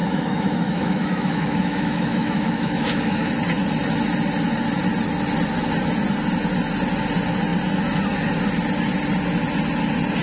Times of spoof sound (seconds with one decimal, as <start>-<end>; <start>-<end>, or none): 0.0-3.3